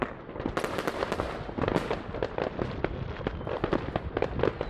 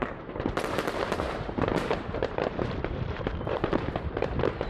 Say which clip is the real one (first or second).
first